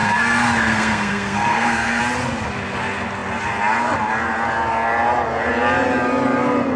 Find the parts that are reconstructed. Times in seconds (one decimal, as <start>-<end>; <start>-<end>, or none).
0.0-2.0